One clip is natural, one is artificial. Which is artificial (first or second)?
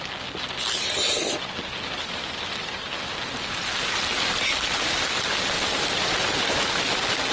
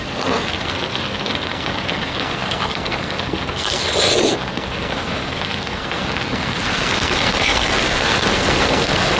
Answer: second